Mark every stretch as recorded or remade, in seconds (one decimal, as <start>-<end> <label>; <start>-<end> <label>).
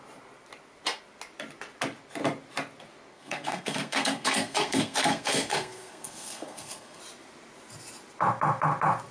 0.0-3.1 recorded; 3.1-7.0 remade; 7.0-9.1 recorded